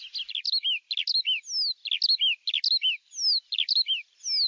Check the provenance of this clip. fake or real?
real